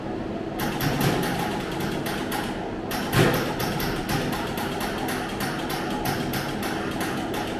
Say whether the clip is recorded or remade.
recorded